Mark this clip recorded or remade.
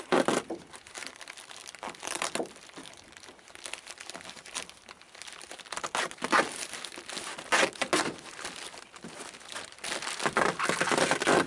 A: recorded